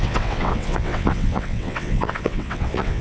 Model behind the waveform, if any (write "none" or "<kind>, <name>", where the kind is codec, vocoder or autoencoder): vocoder, WaveNeXt